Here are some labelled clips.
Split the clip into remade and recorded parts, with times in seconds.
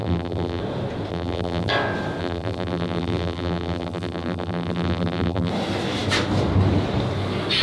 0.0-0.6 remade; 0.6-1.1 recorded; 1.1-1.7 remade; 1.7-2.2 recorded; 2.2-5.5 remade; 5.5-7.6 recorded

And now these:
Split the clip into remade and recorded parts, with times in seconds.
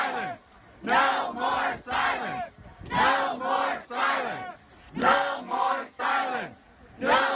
0.0-5.0 recorded; 5.0-6.0 remade; 6.0-7.4 recorded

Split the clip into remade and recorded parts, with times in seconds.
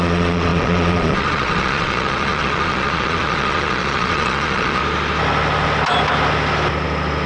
0.0-4.8 remade; 4.8-7.3 recorded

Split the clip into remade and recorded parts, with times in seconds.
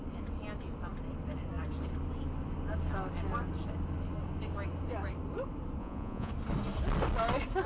0.0-5.8 recorded; 5.8-6.3 remade; 6.3-7.7 recorded